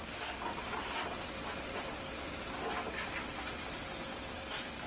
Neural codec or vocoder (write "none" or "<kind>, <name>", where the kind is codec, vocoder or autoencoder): none